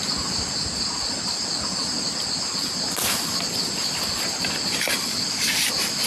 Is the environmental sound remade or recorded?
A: recorded